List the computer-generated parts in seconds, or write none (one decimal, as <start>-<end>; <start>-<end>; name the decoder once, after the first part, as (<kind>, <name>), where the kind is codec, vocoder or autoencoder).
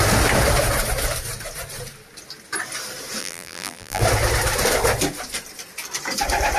3.2-4.0 (vocoder, BigVGAN v2)